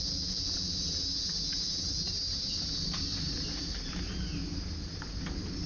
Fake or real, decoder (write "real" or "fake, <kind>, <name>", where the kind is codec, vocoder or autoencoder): real